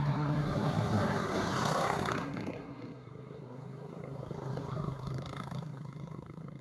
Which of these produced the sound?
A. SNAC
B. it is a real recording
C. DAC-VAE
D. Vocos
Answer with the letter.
A